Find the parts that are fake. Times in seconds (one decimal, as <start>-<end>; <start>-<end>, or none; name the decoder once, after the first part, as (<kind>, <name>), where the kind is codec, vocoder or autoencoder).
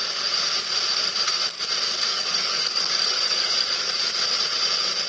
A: 2.1-3.9 (codec, DAC)